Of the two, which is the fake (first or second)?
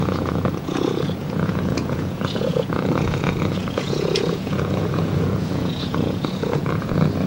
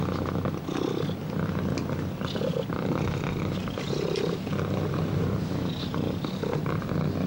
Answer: first